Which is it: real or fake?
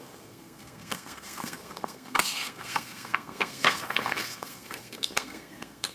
fake